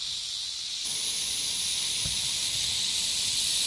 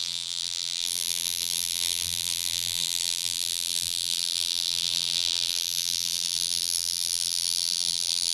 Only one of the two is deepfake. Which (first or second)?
second